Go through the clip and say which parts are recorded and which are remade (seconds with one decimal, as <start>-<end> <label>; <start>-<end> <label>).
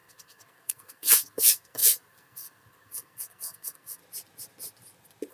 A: 0.0-4.0 remade; 4.0-5.3 recorded